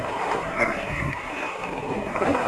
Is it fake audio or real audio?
fake